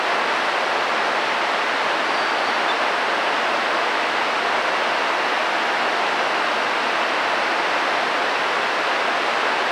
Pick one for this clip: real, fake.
real